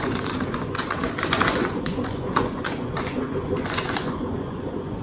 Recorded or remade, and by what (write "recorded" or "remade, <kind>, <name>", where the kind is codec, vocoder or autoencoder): remade, vocoder, Vocos